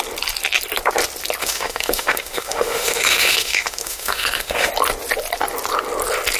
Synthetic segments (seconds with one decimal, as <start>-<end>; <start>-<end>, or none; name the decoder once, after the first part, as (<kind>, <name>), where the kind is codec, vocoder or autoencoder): 1.4-4.7 (autoencoder, DAC-VAE)